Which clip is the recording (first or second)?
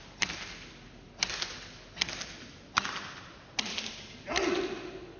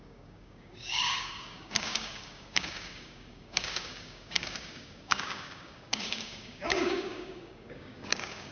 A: first